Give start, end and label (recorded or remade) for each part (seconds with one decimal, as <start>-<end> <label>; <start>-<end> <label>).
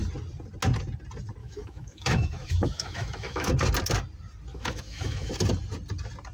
0.0-1.4 recorded; 1.4-3.5 remade; 3.5-4.5 recorded; 4.5-5.3 remade; 5.3-6.3 recorded